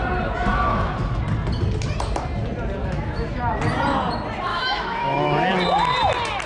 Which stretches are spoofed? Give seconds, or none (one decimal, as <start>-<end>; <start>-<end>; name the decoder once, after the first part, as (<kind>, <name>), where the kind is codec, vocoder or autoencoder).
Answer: 0.5-1.2 (autoencoder, DAC-VAE); 2.8-3.4; 4.5-5.5